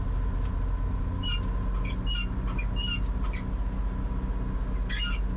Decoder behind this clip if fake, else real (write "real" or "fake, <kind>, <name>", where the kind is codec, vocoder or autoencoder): real